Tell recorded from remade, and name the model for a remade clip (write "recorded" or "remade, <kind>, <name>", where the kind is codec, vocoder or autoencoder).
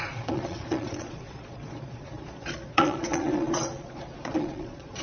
remade, vocoder, Vocos